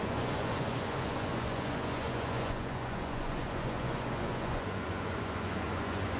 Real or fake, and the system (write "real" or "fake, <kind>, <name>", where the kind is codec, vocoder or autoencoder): fake, vocoder, Vocos